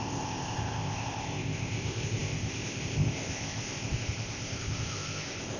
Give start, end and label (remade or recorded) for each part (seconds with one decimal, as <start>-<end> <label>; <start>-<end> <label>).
0.0-5.6 remade